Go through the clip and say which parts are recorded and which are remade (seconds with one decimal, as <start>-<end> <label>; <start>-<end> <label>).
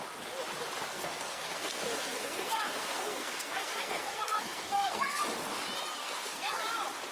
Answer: 0.0-0.9 recorded; 0.9-5.2 remade; 5.2-6.0 recorded; 6.0-6.6 remade; 6.6-7.1 recorded